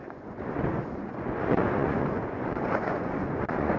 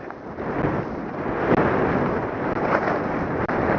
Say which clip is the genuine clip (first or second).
second